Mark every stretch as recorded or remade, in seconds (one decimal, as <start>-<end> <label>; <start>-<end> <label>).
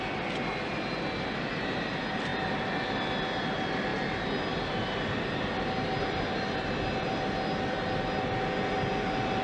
0.0-9.4 recorded